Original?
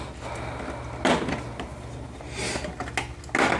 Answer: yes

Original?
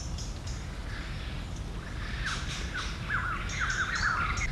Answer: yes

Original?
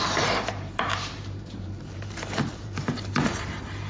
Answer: no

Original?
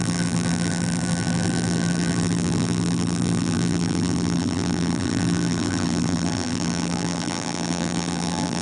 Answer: no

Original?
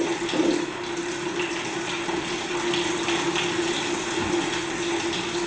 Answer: yes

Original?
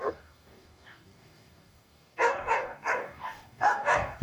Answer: no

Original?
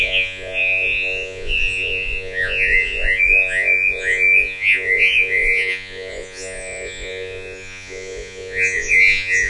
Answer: no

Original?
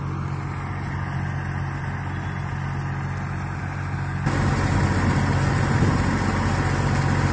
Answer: yes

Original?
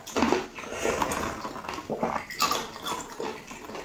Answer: yes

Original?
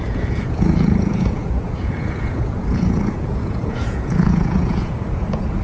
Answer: no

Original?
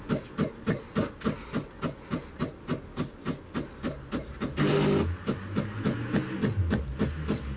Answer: yes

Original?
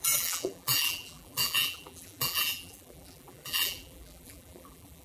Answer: no